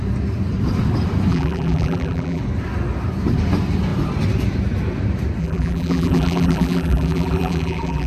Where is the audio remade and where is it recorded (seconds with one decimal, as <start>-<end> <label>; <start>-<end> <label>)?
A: 0.0-1.3 recorded; 1.3-2.4 remade; 2.4-5.4 recorded; 5.4-8.1 remade